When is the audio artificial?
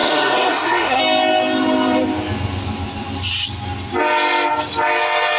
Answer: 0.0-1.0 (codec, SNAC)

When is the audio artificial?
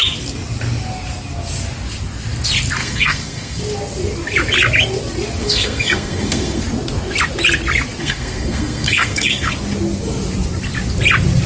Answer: 2.8-3.6 (codec, SNAC); 5.4-6.6; 8.0-9.5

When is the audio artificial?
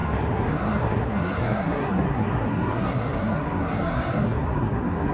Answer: 0.0-5.1 (codec, SNAC)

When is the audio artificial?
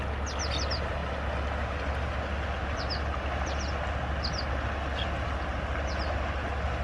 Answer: none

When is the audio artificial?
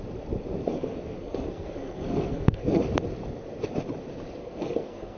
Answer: 0.7-2.8 (codec, SNAC); 4.4-5.2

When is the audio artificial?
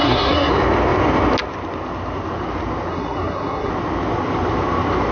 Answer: 0.0-0.5 (codec, SNAC); 2.9-3.7